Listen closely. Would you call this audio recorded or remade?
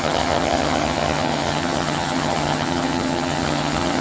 remade